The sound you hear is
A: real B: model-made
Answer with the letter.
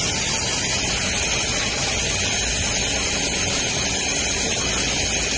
A